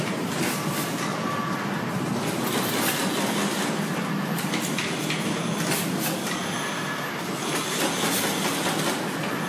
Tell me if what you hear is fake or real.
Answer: real